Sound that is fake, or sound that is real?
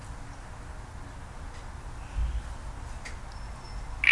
real